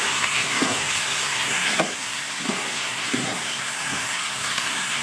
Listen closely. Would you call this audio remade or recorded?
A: remade